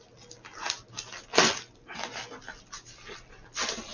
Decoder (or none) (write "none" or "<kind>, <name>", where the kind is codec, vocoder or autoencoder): none